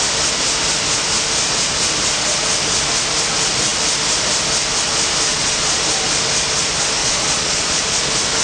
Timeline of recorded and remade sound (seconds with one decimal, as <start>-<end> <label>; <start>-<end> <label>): 0.0-5.3 recorded; 5.3-5.8 remade; 5.8-7.0 recorded; 7.0-7.8 remade; 7.8-8.4 recorded